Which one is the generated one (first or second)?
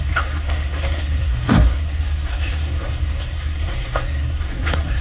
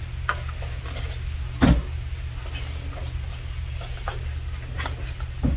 first